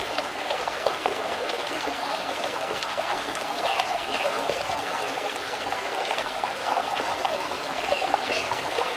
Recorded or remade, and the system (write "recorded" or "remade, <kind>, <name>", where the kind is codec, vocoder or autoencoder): remade, codec, SNAC